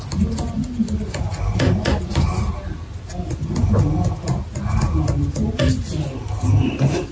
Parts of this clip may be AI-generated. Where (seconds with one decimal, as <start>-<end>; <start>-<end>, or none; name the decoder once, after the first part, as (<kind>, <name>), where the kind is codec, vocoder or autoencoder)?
none